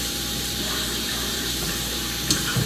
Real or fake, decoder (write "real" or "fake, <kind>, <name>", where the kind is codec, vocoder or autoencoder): fake, vocoder, BigVGAN v2